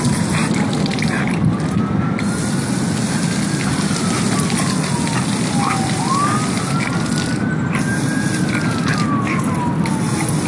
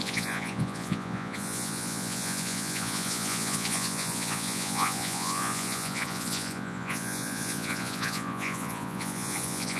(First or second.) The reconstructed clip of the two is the second